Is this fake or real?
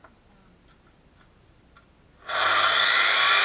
real